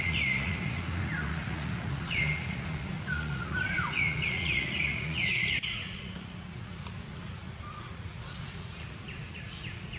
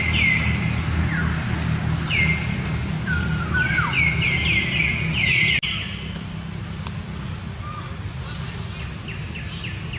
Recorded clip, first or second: second